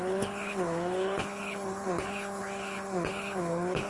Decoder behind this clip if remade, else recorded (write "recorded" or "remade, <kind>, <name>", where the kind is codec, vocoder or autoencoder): remade, codec, HILCodec